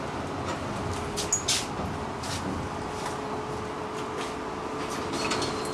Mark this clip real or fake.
real